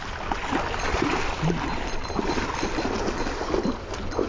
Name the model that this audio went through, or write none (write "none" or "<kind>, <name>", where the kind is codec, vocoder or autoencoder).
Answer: none